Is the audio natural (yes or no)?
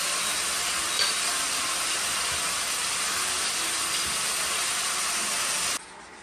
yes